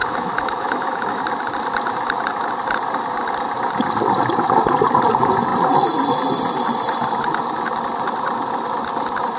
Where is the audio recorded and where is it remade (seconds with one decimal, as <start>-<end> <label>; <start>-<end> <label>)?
0.0-1.2 remade; 1.2-9.4 recorded